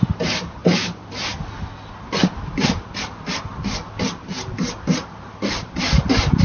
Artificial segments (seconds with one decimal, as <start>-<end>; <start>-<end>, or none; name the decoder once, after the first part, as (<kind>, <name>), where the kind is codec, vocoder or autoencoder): 0.6-1.2 (vocoder, BigVGAN v2)